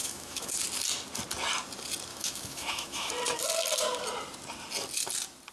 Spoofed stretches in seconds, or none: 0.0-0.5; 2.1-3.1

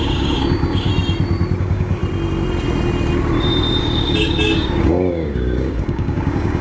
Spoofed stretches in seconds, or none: 0.0-0.9; 1.6-2.0; 3.8-6.6